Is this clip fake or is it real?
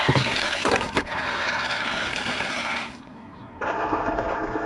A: fake